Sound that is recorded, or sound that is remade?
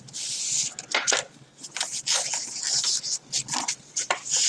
recorded